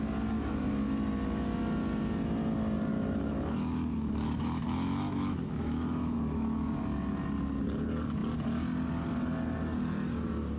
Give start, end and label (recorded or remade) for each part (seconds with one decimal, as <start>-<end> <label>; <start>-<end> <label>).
0.0-2.9 recorded; 2.9-6.8 remade; 6.8-10.6 recorded